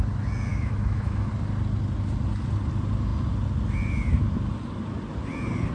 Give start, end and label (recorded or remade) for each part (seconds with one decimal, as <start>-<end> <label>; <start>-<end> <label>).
0.0-0.5 recorded; 0.5-1.3 remade; 1.3-5.7 recorded